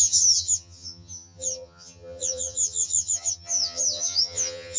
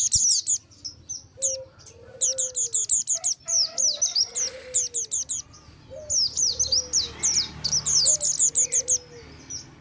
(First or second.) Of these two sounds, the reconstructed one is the first